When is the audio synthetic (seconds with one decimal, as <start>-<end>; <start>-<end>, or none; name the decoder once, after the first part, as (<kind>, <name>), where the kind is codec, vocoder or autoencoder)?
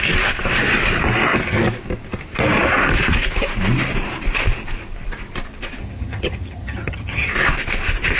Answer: 5.8-7.3 (vocoder, HiFi-GAN)